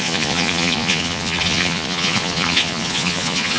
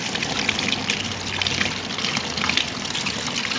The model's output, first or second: first